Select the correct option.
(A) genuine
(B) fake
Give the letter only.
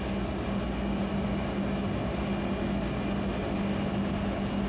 A